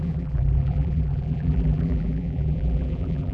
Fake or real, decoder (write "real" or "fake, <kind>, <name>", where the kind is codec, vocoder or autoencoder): fake, vocoder, BigVGAN v2